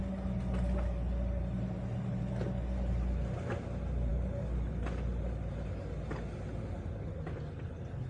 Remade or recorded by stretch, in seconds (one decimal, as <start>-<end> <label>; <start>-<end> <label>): 0.0-8.1 recorded